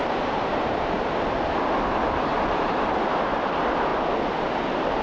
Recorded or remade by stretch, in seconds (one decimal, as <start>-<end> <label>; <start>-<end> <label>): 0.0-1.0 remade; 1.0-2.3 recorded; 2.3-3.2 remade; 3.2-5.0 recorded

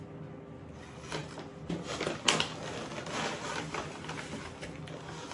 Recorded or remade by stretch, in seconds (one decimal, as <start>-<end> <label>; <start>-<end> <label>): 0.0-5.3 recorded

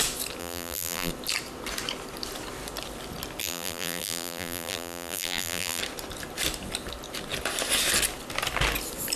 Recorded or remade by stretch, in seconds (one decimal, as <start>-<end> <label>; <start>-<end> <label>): 0.0-0.4 recorded; 0.4-1.1 remade; 1.1-3.4 recorded; 3.4-5.8 remade; 5.8-9.2 recorded

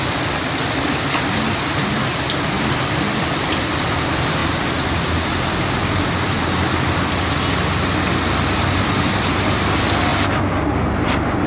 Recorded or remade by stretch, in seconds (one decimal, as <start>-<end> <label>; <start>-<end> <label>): 0.0-4.4 remade; 4.4-9.0 recorded; 9.0-10.1 remade; 10.1-10.7 recorded; 10.7-11.5 remade

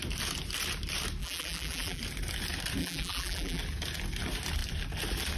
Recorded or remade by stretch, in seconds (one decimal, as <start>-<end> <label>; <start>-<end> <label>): 0.0-1.2 recorded; 1.2-2.0 remade; 2.0-2.8 recorded; 2.8-3.6 remade; 3.6-5.4 recorded

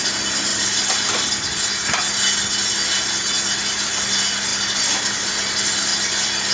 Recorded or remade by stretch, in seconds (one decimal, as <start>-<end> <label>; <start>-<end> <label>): 0.0-4.5 recorded; 4.5-5.3 remade; 5.3-5.9 recorded; 5.9-6.5 remade

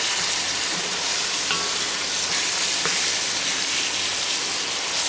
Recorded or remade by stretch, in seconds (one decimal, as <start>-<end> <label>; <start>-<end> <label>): 0.0-5.1 recorded

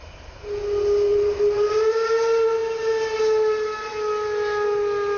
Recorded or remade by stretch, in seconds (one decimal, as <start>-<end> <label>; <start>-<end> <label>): 0.0-1.1 recorded; 1.1-1.7 remade; 1.7-5.2 recorded